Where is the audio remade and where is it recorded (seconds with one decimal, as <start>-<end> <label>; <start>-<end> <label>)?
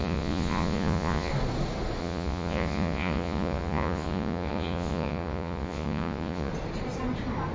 0.0-1.3 remade; 1.3-2.0 recorded; 2.0-6.5 remade; 6.5-7.5 recorded